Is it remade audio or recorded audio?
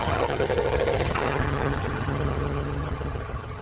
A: remade